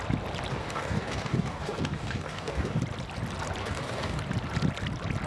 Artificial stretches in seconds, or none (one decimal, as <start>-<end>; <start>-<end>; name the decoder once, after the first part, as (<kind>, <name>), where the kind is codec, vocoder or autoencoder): 0.5-2.8 (codec, DAC); 3.6-4.2